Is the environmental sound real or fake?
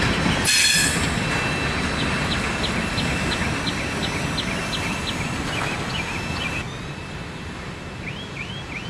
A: real